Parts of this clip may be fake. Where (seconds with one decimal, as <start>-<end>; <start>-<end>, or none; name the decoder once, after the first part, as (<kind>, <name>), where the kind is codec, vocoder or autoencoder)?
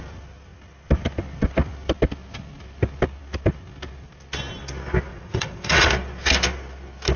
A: 5.1-5.9 (vocoder, WaveNeXt)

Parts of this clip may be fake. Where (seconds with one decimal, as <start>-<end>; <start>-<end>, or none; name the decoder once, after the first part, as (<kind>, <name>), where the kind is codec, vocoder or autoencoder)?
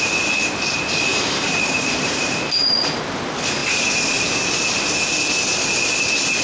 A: 1.1-3.0 (vocoder, BigVGAN v2)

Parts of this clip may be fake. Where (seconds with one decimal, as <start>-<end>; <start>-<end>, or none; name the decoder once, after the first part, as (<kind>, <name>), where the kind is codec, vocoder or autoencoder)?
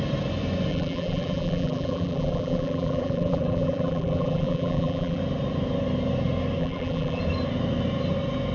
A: 0.7-5.2 (vocoder, BigVGAN v2); 6.6-7.2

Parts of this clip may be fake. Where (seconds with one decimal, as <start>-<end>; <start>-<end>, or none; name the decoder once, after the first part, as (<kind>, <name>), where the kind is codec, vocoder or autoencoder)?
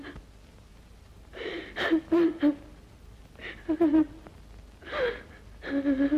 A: 0.7-4.4 (vocoder, BigVGAN v2)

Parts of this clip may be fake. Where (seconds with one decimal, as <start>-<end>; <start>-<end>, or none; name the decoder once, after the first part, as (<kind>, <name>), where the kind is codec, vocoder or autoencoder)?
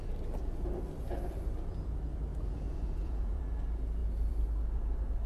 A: 2.3-3.4 (vocoder, Vocos)